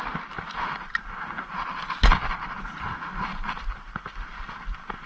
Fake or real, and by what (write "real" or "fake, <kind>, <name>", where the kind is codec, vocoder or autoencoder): real